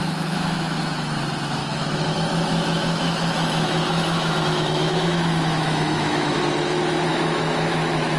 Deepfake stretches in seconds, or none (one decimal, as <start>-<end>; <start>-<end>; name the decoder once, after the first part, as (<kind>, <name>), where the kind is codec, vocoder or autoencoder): 0.0-1.2 (autoencoder, DAC-VAE); 1.6-6.4; 7.1-8.2